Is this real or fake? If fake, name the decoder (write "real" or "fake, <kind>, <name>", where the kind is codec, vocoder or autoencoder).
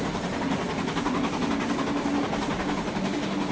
real